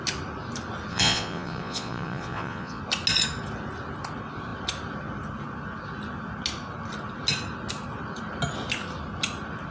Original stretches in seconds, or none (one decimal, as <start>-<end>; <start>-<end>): 0.0-0.9; 2.8-9.7